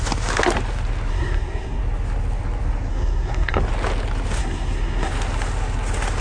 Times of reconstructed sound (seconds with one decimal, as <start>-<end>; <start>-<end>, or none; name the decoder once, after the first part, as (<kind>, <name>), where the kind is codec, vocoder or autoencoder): 1.1-1.8 (codec, SNAC); 2.9-3.6; 4.4-5.1